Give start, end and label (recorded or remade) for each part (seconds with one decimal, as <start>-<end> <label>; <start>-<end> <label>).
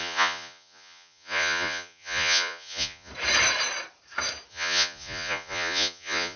0.0-3.1 remade; 3.1-4.5 recorded; 4.5-6.4 remade